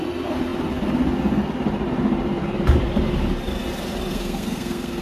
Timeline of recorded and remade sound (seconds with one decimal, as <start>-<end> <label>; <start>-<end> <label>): 0.0-4.1 recorded; 4.1-5.0 remade

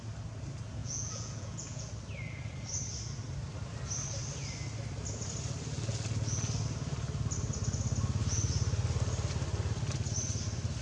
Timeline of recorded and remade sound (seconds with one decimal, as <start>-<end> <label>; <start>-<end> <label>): 0.0-0.8 recorded; 0.8-1.9 remade; 1.9-10.8 recorded

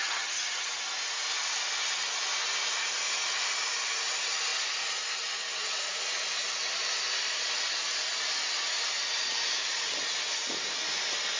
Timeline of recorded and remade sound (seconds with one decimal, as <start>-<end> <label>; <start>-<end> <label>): 0.0-0.7 remade; 0.7-11.4 recorded

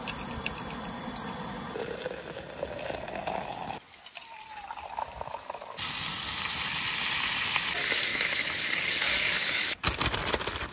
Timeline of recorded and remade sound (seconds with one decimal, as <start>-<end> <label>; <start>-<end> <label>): 0.0-8.1 recorded; 8.1-9.7 remade; 9.7-10.7 recorded

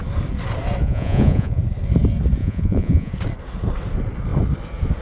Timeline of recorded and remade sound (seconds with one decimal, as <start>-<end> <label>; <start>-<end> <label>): 0.0-0.8 recorded; 0.8-1.6 remade; 1.6-2.4 recorded; 2.4-3.1 remade; 3.1-5.0 recorded

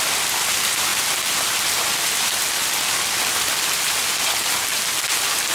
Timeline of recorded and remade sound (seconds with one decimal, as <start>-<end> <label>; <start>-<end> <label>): 0.0-5.5 recorded